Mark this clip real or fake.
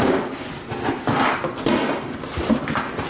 real